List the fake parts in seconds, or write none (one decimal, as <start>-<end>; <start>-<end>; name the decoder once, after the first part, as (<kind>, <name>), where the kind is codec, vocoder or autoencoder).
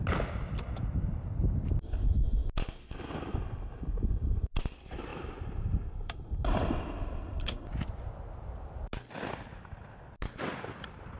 none